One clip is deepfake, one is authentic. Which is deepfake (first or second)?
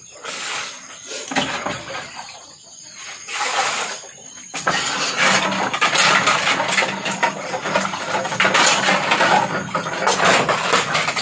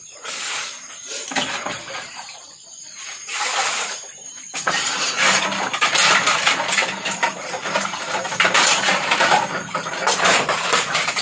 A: second